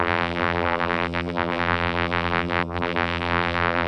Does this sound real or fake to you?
fake